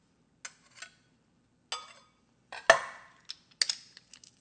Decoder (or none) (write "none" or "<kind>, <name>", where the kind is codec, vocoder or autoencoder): none